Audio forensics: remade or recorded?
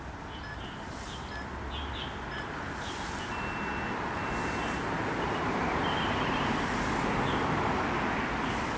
recorded